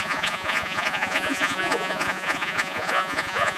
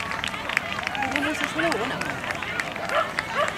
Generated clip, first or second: first